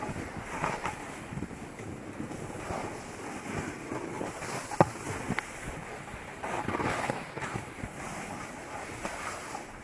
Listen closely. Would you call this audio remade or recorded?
recorded